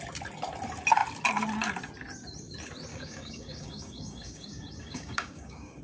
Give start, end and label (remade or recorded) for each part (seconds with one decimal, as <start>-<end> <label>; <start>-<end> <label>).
0.0-2.9 recorded; 2.9-5.8 remade